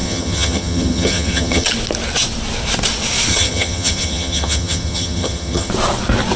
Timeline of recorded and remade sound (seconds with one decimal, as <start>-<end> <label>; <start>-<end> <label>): 0.0-1.7 remade; 1.7-3.3 recorded; 3.3-5.7 remade; 5.7-6.4 recorded